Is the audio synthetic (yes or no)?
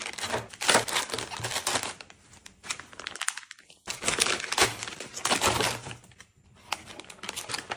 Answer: no